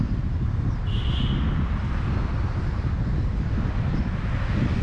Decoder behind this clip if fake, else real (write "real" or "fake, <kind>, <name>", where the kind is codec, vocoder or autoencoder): real